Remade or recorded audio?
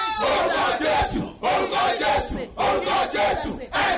recorded